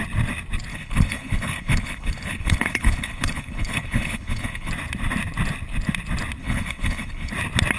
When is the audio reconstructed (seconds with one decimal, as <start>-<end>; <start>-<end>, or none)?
0.7-4.7; 6.4-7.3